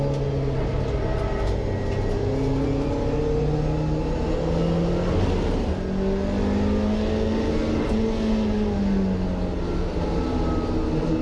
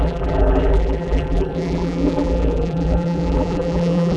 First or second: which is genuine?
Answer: first